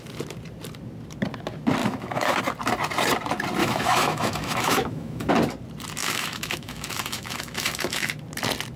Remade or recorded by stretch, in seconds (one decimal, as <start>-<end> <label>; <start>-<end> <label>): 0.0-1.8 recorded; 1.8-2.4 remade; 2.4-3.6 recorded; 3.6-5.3 remade; 5.3-6.0 recorded; 6.0-8.1 remade; 8.1-8.8 recorded